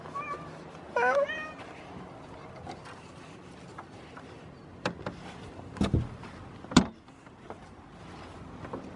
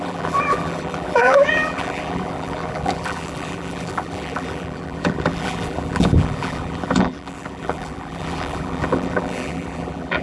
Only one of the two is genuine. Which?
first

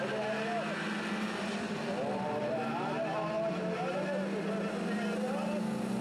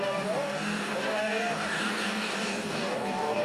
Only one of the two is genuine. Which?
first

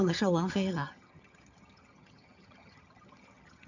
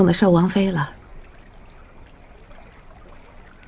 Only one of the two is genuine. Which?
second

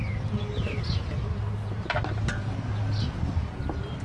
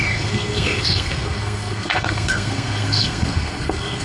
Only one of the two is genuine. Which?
first